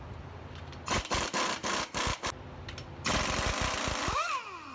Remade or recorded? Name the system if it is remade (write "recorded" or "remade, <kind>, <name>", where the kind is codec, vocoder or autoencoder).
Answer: recorded